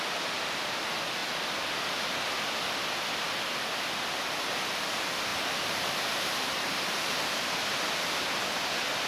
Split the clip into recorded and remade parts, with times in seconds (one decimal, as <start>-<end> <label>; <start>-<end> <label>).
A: 0.0-5.3 recorded; 5.3-7.4 remade; 7.4-9.1 recorded